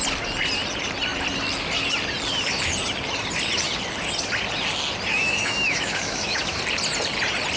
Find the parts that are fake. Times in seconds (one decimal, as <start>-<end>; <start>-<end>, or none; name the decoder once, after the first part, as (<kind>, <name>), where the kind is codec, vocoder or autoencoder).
5.1-6.6 (autoencoder, DAC-VAE)